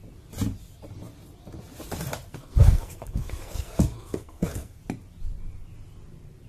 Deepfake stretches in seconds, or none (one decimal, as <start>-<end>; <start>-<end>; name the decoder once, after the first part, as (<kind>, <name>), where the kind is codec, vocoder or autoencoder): 2.3-4.8 (codec, SNAC)